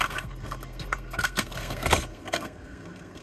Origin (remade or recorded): remade